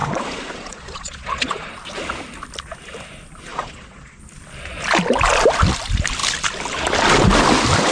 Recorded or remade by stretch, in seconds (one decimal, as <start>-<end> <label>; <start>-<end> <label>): 0.0-1.7 remade; 1.7-3.5 recorded; 3.5-4.2 remade; 4.2-7.9 recorded